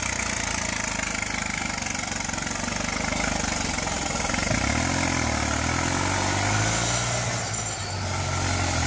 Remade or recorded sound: recorded